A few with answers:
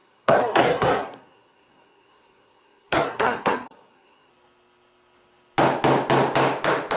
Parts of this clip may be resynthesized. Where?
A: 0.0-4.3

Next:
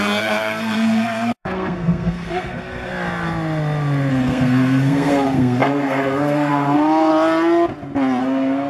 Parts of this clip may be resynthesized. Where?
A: 0.0-2.9; 4.1-7.1; 8.2-8.7

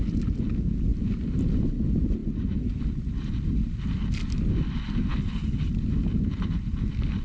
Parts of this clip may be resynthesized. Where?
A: 5.1-5.7